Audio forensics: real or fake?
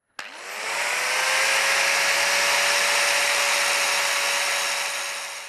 real